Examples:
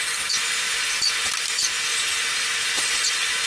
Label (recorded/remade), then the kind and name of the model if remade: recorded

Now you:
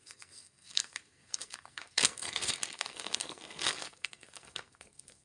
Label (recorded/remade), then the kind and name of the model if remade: remade, codec, SNAC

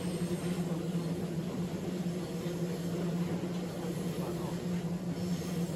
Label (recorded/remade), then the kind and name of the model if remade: recorded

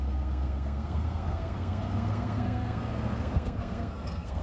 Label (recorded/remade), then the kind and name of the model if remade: remade, codec, SNAC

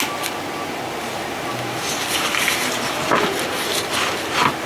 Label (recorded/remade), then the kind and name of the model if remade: recorded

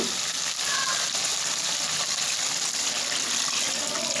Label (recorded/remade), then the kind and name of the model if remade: recorded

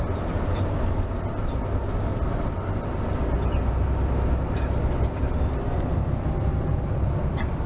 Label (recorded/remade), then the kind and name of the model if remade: recorded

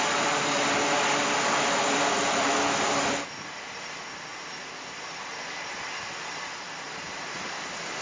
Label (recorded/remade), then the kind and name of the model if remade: recorded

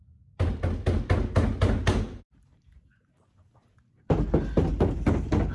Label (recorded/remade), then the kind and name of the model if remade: recorded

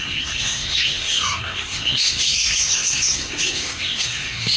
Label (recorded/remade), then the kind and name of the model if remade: remade, codec, SNAC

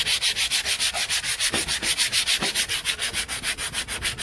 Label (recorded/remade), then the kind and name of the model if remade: recorded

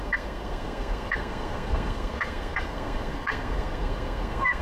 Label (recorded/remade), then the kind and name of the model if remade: remade, codec, SNAC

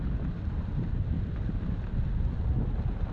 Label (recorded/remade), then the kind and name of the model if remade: recorded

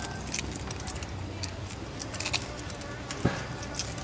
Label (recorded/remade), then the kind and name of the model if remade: recorded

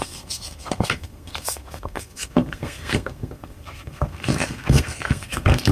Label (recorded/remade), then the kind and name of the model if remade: remade, codec, SNAC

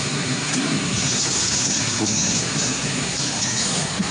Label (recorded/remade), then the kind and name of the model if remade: remade, codec, SNAC